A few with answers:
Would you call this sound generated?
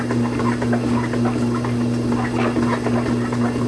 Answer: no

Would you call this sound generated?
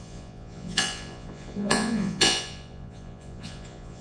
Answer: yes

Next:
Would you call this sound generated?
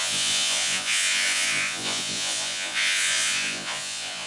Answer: yes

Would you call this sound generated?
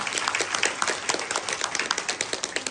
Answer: no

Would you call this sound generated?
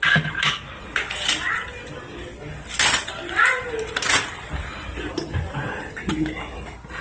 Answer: no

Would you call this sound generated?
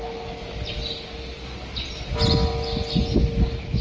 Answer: no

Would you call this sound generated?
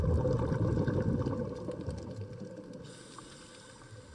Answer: no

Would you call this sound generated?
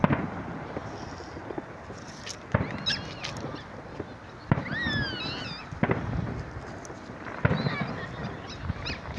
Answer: no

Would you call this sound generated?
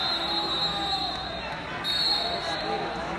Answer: no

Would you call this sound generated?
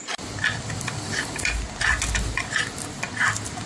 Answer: no